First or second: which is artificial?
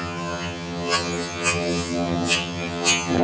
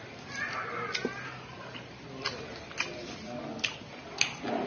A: first